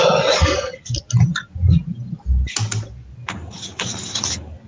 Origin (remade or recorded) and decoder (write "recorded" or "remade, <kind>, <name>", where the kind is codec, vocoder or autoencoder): recorded